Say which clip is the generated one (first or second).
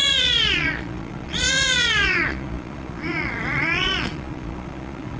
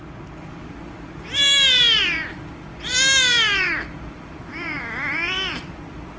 first